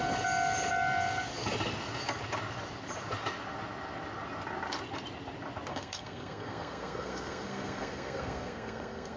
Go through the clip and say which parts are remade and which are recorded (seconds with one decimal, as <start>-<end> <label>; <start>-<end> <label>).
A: 0.0-5.7 recorded; 5.7-9.2 remade